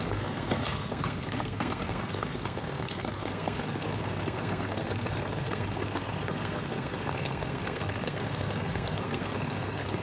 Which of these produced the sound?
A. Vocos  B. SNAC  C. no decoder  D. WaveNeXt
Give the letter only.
B